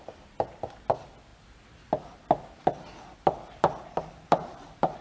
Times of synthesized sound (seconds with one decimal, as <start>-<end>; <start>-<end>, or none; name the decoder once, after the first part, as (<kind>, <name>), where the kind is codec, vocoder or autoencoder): none